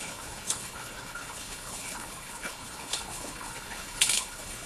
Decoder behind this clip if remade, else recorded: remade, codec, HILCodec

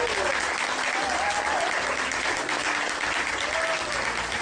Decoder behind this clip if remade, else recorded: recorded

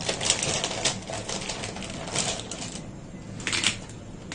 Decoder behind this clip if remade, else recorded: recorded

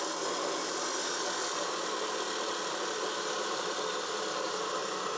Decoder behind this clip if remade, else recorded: recorded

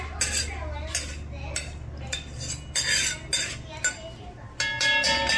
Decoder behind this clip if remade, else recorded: recorded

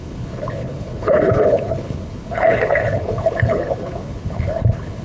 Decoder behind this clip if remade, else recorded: remade, codec, HILCodec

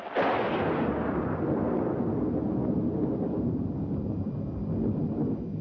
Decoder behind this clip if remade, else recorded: recorded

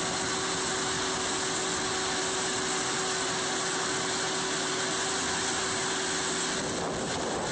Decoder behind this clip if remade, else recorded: recorded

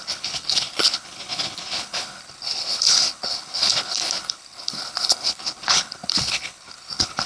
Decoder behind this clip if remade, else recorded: remade, codec, HILCodec